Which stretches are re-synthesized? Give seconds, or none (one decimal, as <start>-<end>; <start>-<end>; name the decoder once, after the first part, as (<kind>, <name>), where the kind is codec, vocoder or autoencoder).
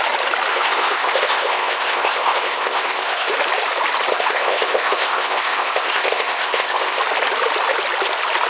0.5-3.3 (codec, ZipCodec); 4.1-7.0